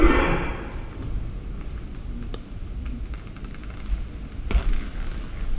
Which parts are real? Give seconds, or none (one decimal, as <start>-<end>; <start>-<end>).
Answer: 0.0-5.6